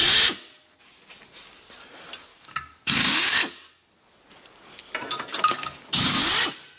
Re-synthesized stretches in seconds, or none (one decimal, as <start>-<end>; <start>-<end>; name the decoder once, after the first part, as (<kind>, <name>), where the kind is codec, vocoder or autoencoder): 2.3-3.5 (codec, DAC); 5.3-6.3